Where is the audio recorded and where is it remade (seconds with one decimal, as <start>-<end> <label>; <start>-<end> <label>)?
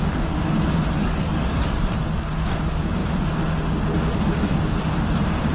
0.0-1.0 recorded; 1.0-1.9 remade; 1.9-5.5 recorded